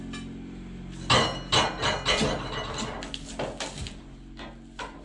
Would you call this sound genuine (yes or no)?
yes